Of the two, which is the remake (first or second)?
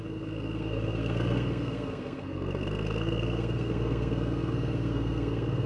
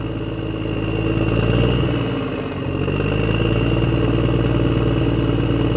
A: first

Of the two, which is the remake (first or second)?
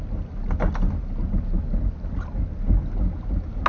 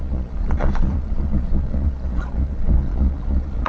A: second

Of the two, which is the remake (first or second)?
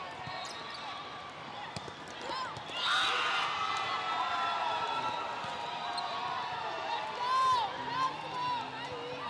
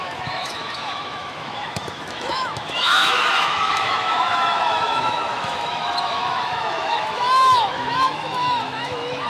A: second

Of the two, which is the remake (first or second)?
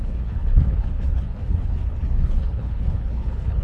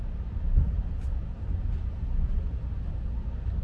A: first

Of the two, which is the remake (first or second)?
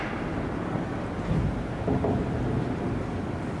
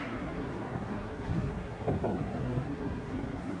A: second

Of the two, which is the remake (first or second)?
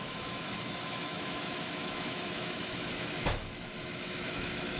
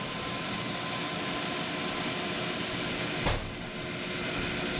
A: first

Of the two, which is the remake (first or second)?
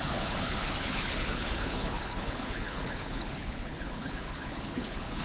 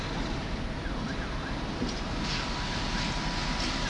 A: first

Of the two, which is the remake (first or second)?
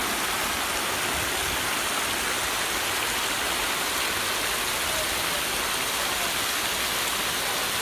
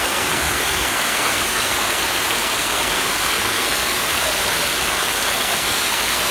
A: second